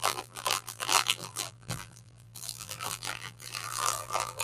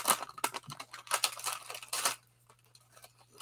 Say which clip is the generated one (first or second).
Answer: first